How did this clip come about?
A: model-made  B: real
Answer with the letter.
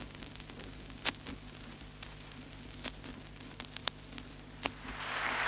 B